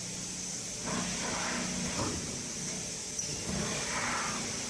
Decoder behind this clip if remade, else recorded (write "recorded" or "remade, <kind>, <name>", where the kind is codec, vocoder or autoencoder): recorded